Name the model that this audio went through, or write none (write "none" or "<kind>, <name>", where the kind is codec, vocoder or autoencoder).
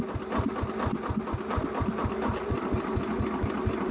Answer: none